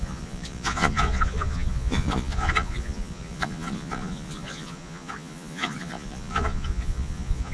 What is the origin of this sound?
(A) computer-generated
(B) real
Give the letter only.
A